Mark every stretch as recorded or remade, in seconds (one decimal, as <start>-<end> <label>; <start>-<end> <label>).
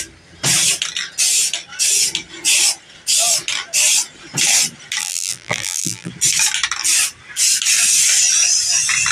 0.0-5.0 recorded; 5.0-6.1 remade; 6.1-9.1 recorded